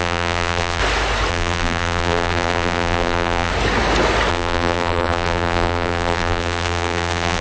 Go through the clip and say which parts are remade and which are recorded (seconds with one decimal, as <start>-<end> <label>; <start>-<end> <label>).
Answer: 0.0-0.8 remade; 0.8-1.3 recorded; 1.3-3.5 remade; 3.5-4.3 recorded; 4.3-7.4 remade